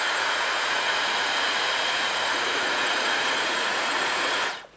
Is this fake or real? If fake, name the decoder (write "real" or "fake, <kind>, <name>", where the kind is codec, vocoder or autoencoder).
fake, vocoder, Vocos